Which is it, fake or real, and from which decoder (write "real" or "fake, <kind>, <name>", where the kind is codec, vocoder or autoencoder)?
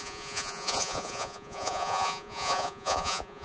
fake, vocoder, Vocos